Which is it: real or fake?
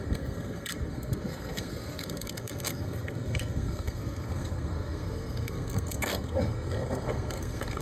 fake